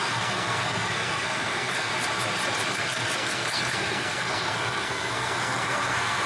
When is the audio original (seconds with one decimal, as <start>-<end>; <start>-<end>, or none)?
1.9-2.7